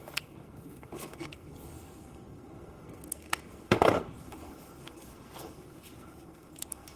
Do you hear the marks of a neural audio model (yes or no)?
yes